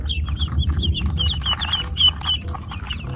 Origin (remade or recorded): recorded